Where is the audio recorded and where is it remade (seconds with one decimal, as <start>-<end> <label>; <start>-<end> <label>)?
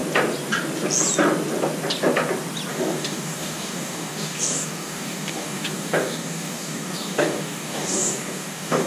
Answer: 0.0-2.7 recorded; 2.7-8.9 remade